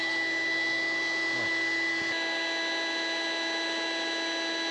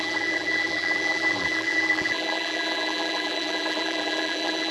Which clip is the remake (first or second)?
second